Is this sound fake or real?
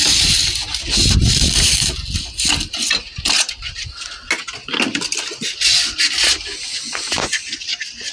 real